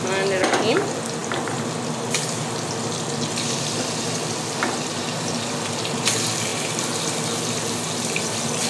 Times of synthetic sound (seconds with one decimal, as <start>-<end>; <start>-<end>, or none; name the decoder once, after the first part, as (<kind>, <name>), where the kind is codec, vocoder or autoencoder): none